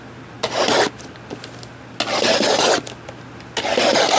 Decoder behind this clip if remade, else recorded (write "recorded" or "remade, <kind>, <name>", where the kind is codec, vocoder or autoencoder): recorded